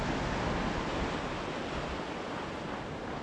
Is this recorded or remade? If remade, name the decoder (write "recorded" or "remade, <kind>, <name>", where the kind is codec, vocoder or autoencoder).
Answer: recorded